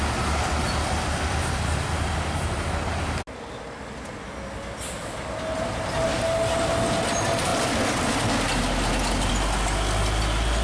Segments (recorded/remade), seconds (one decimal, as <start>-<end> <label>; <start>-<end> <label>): 0.0-10.6 recorded